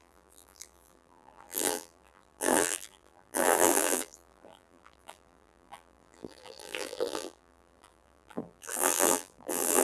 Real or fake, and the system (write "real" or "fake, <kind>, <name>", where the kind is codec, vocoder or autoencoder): fake, vocoder, BigVGAN v2